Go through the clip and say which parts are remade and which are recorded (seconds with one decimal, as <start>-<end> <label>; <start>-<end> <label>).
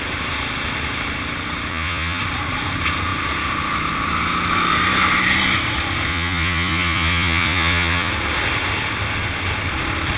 0.0-1.7 recorded; 1.7-2.2 remade; 2.2-6.1 recorded; 6.1-8.1 remade; 8.1-10.2 recorded